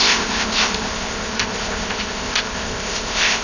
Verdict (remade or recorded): remade